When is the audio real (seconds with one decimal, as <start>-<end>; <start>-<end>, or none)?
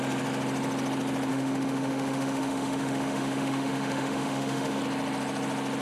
0.0-1.3; 4.8-5.8